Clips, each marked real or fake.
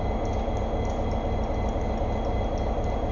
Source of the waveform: real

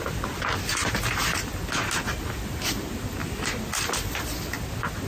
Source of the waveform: real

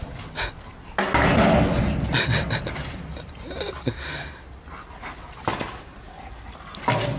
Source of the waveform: real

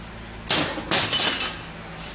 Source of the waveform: real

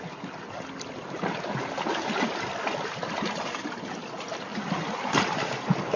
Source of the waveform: real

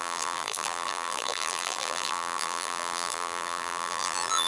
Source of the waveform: fake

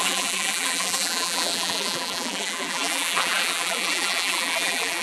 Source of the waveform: fake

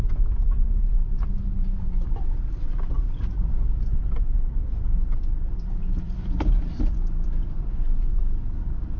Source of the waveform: fake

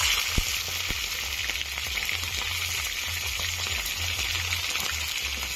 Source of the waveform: real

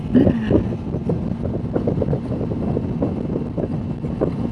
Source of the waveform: real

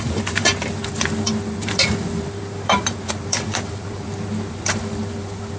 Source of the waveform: fake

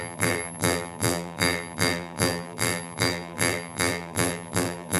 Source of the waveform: fake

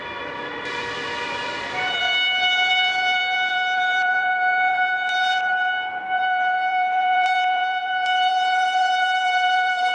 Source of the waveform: fake